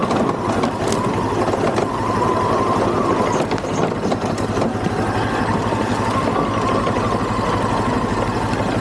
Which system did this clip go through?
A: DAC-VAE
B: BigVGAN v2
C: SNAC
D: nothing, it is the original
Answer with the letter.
D